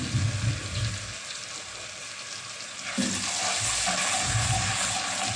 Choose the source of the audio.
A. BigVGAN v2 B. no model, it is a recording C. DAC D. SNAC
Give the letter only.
B